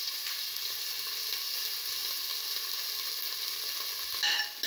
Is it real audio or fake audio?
real